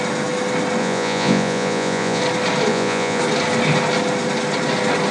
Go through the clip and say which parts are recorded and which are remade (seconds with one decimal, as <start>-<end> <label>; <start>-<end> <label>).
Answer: 0.0-0.8 recorded; 0.8-2.2 remade; 2.2-2.7 recorded; 2.7-3.2 remade; 3.2-5.1 recorded